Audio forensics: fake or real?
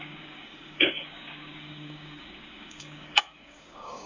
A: fake